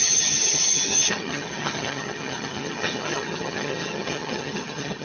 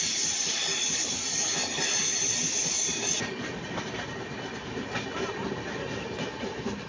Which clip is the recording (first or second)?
second